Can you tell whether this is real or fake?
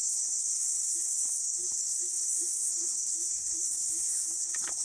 fake